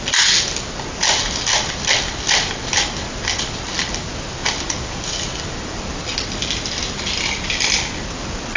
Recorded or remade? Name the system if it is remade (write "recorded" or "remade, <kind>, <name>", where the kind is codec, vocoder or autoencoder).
recorded